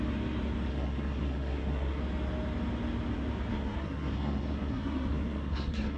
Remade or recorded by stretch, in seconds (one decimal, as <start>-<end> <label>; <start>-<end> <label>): 0.0-0.7 recorded; 0.7-2.0 remade; 2.0-3.5 recorded; 3.5-6.0 remade